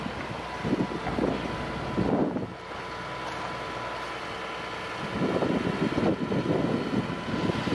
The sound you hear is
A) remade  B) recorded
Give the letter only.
B